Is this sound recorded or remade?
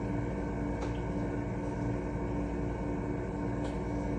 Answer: recorded